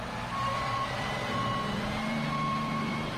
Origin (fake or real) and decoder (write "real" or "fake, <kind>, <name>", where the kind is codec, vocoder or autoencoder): fake, vocoder, BigVGAN v2